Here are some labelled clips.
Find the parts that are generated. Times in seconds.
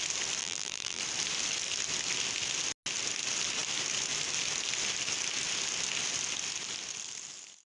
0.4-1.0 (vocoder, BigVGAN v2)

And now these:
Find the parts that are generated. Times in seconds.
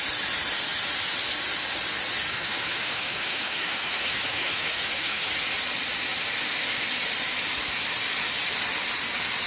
2.3-5.3 (autoencoder, DAC-VAE)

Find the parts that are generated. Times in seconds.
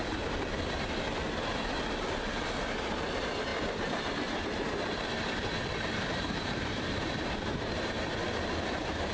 3.5-8.1 (vocoder, BigVGAN v2)